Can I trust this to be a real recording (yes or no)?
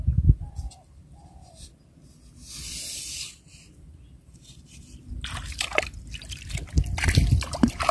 yes